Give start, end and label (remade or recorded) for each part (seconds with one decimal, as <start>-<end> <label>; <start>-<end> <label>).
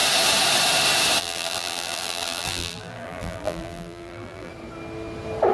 0.0-1.2 recorded; 1.2-4.5 remade; 4.5-5.5 recorded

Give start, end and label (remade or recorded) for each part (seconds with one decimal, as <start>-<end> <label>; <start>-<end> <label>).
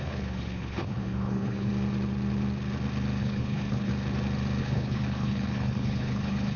0.0-1.7 remade; 1.7-3.2 recorded; 3.2-3.9 remade; 3.9-4.6 recorded; 4.6-6.6 remade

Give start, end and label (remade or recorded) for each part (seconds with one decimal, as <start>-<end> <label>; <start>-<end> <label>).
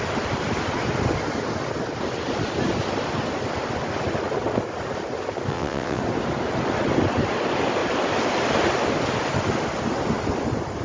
0.0-5.5 recorded; 5.5-6.0 remade; 6.0-10.8 recorded